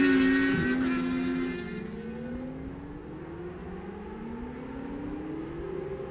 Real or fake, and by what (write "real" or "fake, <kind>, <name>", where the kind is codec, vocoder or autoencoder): real